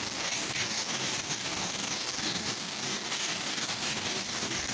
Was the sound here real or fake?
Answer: fake